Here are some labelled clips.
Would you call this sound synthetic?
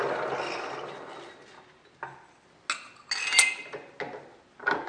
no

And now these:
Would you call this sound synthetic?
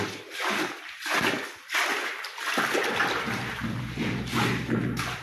no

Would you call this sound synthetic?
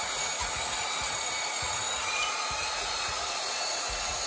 yes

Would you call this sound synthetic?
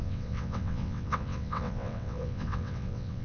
yes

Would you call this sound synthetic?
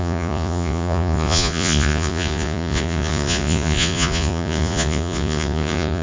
yes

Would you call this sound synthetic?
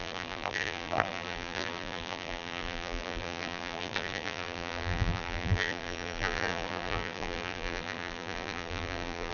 yes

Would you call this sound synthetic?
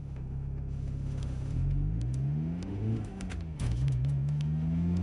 yes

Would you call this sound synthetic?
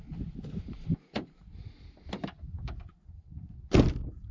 no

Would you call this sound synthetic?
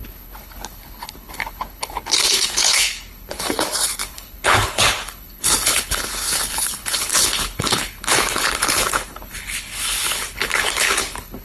yes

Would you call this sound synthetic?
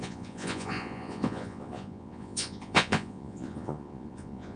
yes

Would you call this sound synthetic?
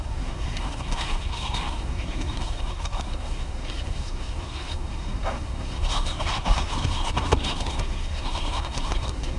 yes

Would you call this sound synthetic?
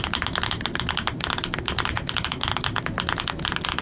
no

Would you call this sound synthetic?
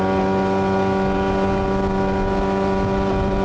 no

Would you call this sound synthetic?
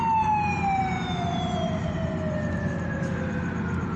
no